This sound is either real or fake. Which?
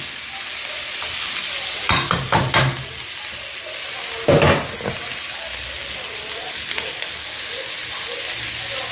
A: real